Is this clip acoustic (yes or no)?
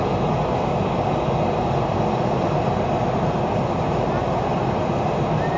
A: yes